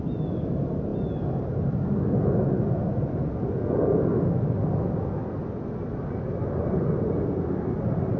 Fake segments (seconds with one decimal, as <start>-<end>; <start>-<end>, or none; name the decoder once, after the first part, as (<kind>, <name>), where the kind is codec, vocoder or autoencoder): none